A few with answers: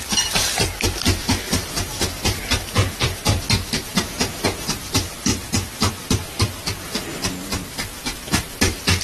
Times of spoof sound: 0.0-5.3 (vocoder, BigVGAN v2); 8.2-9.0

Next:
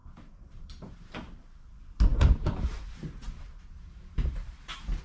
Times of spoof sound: 0.0-1.4 (vocoder, BigVGAN v2); 2.1-5.0

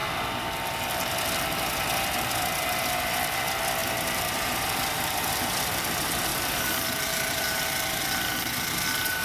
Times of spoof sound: 3.8-5.3 (vocoder, BigVGAN v2); 6.3-8.0

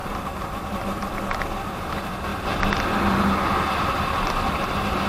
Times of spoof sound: 0.0-1.4 (vocoder, BigVGAN v2)

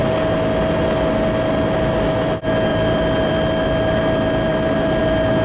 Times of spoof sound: 2.7-3.3 (vocoder, BigVGAN v2); 4.5-5.0